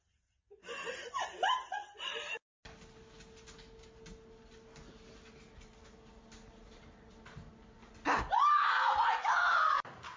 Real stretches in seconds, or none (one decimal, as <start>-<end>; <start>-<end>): 0.0-10.2